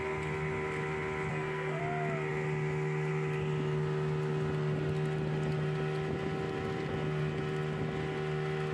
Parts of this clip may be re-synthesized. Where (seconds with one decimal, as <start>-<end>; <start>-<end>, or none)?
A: 1.3-1.8